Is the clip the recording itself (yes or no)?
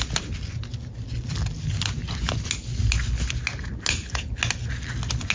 yes